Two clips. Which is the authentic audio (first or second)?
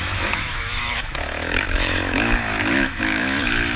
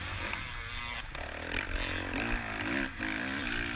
second